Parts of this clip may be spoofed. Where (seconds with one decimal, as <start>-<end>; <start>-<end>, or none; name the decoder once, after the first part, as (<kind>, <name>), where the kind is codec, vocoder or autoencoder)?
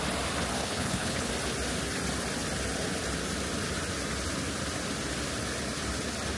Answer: 0.6-1.3 (codec, HILCodec)